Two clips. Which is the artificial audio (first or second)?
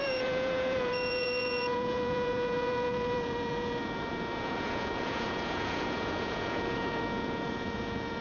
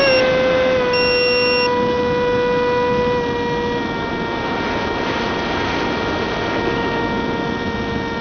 first